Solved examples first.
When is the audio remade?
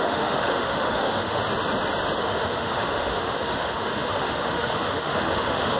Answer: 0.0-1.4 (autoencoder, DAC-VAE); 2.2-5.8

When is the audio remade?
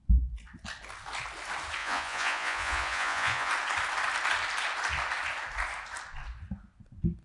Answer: 1.8-3.5 (vocoder, Vocos)